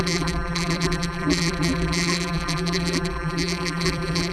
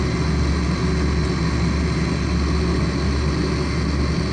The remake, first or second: first